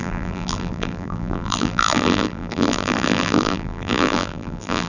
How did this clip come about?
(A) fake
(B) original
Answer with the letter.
A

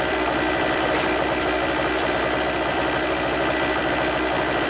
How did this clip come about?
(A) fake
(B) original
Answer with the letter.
A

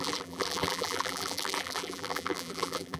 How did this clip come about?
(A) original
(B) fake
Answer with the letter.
B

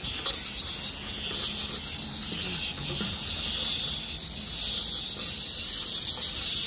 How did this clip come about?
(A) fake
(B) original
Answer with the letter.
B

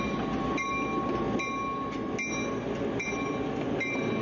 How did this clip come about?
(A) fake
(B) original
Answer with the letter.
B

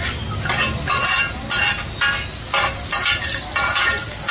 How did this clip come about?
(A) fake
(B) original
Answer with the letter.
B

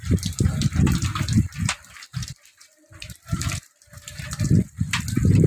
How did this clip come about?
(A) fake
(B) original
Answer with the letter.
A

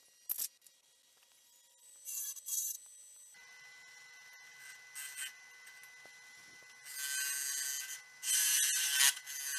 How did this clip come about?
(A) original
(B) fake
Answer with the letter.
A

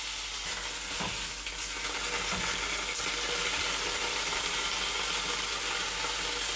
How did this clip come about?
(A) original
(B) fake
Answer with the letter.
A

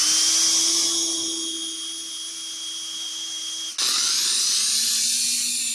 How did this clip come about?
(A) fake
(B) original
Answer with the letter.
B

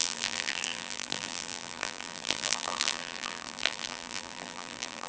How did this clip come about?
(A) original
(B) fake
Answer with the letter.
B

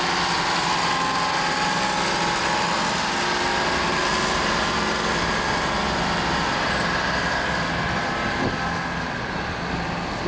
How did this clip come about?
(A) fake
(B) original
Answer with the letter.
B